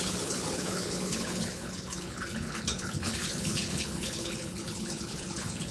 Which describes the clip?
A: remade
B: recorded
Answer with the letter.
A